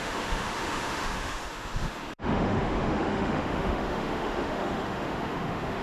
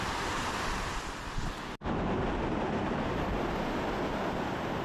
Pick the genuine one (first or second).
second